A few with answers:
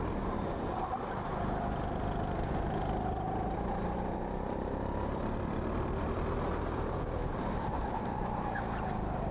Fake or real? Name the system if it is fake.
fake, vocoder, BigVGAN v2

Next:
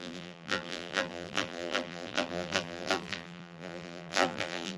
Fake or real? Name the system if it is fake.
fake, vocoder, BigVGAN v2